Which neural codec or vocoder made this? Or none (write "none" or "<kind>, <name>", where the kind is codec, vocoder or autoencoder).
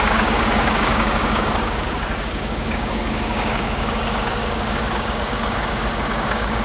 codec, DAC